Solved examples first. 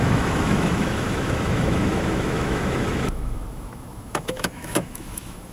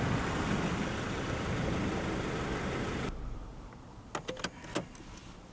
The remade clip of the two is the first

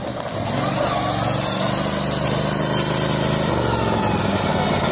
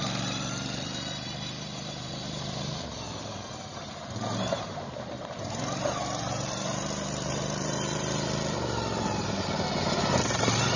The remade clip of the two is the second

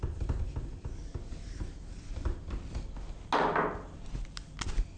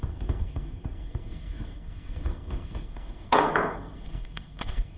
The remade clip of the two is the second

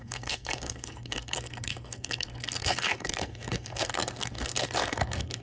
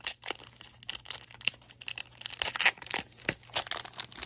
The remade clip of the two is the first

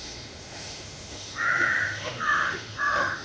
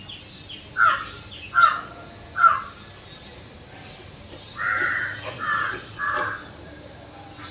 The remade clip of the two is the first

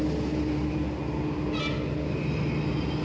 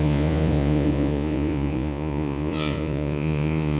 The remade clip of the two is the second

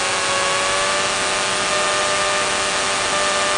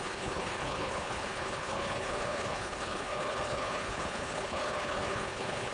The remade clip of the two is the second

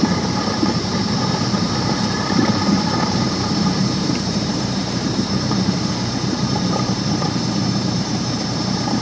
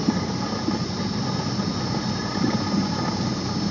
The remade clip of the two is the first